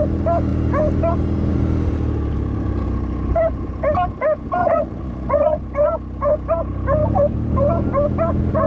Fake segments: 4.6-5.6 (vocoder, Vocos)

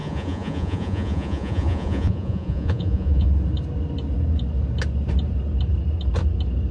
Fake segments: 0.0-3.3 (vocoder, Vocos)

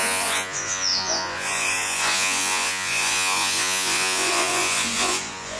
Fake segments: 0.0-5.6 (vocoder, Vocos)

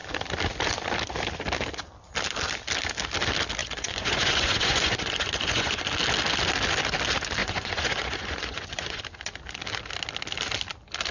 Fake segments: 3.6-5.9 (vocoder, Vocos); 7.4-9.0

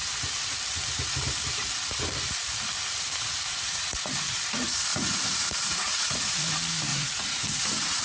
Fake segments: 3.5-4.0 (vocoder, Vocos); 4.9-6.5; 6.9-8.0

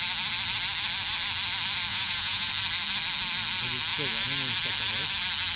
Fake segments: 1.9-2.5 (vocoder, Vocos)

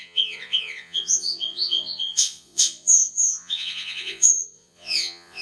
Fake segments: 0.0-5.4 (vocoder, Vocos)